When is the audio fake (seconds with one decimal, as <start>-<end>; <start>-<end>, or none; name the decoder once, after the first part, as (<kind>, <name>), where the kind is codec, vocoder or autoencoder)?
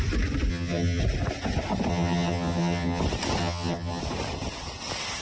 0.5-1.0 (vocoder, HiFi-GAN); 1.9-3.0; 3.4-4.0